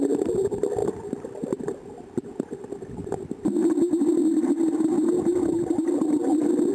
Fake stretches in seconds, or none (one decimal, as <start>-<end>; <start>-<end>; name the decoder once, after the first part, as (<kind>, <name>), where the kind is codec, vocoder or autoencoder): none